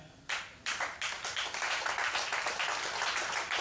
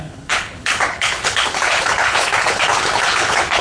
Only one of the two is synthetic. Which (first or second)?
second